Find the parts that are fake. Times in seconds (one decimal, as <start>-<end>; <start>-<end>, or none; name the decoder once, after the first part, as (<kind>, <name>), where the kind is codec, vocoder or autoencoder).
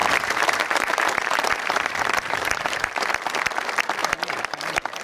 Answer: 0.0-3.0 (vocoder, BigVGAN v2); 4.0-5.0